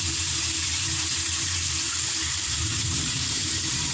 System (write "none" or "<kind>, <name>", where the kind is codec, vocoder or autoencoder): vocoder, BigVGAN v2